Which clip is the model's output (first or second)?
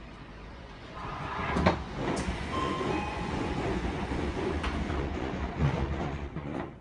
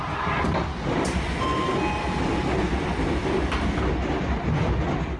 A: first